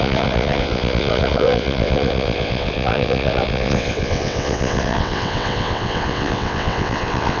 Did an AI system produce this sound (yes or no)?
yes